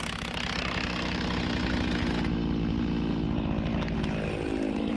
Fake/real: real